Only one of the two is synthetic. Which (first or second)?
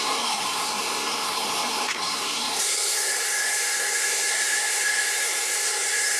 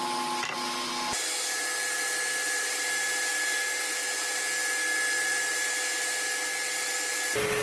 first